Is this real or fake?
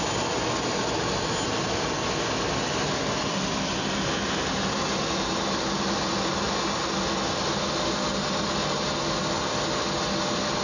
real